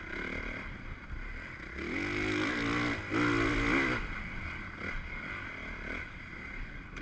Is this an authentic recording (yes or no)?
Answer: yes